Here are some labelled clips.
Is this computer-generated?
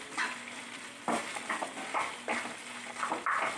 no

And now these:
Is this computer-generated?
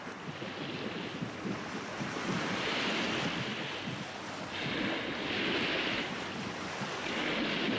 no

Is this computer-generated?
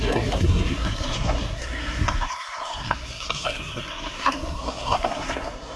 yes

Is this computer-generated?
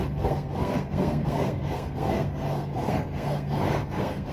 yes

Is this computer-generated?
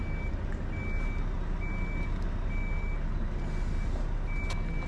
no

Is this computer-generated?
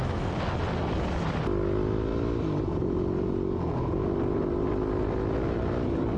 no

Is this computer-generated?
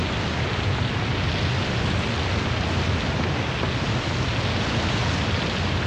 no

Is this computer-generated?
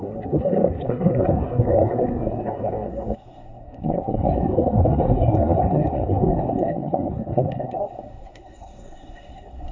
yes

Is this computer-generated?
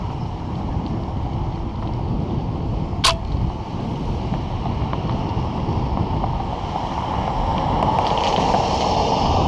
no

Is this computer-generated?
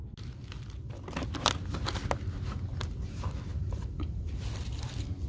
no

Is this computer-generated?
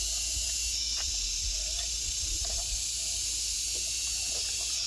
no